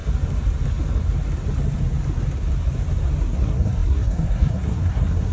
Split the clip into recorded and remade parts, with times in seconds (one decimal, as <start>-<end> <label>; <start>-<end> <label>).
0.0-3.2 recorded; 3.2-5.3 remade